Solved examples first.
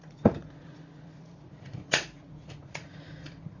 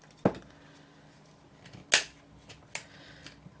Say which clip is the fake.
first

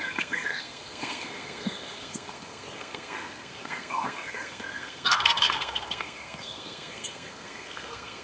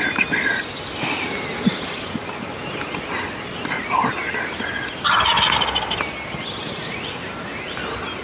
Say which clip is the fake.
first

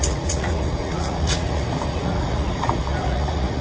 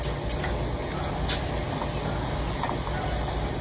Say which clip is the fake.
first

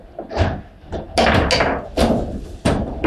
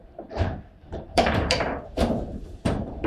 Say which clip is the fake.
second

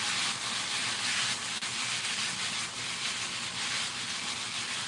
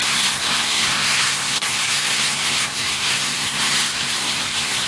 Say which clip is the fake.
second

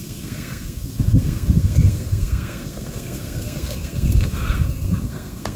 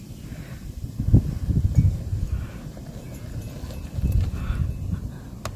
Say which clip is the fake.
first